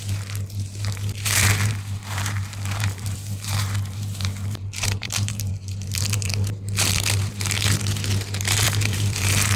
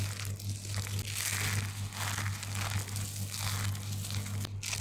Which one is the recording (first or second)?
second